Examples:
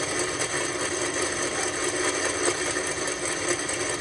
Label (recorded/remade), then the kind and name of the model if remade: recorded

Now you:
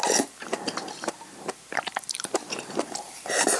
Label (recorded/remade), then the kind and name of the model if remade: remade, vocoder, BigVGAN v2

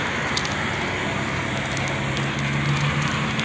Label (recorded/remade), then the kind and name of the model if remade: recorded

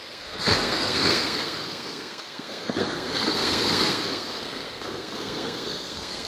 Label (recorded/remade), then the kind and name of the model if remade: remade, codec, SNAC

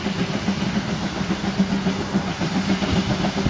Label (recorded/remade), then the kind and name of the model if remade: recorded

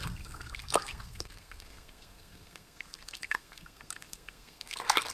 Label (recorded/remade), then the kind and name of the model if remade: remade, codec, SNAC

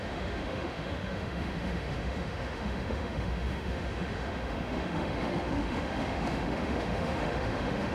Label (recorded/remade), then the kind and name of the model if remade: remade, autoencoder, DAC-VAE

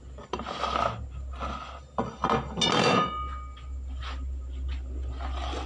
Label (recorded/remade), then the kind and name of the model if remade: recorded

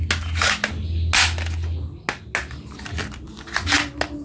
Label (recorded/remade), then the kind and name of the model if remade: recorded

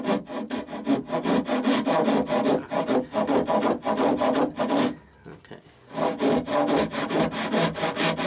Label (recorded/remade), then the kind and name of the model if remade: recorded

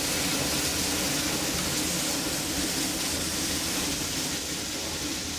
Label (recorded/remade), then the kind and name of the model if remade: recorded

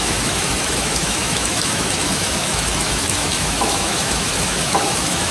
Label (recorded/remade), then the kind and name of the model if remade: remade, autoencoder, DAC-VAE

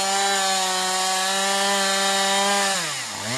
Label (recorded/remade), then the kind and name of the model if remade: recorded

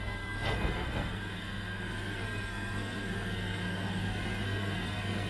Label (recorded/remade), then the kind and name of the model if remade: remade, codec, SNAC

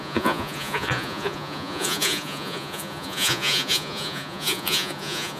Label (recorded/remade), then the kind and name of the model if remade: remade, vocoder, Vocos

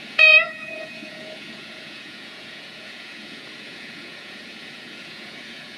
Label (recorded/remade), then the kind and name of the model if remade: remade, vocoder, Vocos